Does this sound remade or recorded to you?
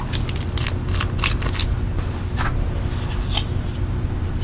recorded